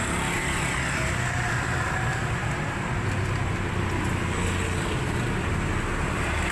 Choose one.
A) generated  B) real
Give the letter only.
B